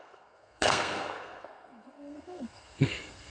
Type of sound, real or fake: fake